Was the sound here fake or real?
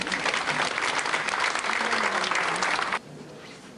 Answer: real